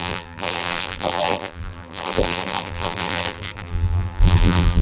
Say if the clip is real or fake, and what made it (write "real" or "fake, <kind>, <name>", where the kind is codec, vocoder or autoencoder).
fake, vocoder, BigVGAN v2